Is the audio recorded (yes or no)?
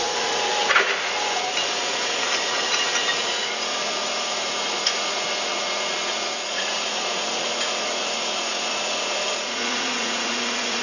no